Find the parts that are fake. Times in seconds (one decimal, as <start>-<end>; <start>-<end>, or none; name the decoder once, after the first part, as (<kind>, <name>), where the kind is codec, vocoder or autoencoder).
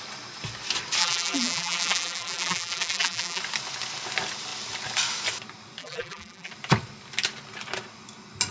1.0-3.4 (vocoder, BigVGAN v2); 5.8-6.5